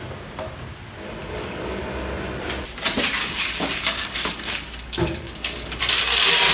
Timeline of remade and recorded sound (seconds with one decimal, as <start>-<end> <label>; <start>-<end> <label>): 0.0-1.2 recorded; 1.2-1.8 remade; 1.8-3.2 recorded; 3.2-5.8 remade; 5.8-6.5 recorded